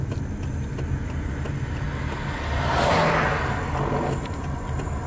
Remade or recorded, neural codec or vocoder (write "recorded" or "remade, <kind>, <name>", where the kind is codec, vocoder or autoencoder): recorded